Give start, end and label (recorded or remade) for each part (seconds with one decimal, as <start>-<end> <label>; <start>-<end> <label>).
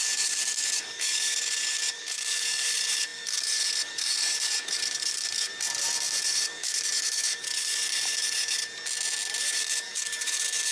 0.0-5.5 remade; 5.5-6.2 recorded; 6.2-8.6 remade; 8.6-9.4 recorded; 9.4-10.7 remade